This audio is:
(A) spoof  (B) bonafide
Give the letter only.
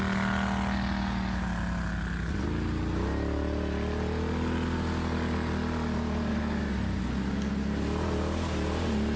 B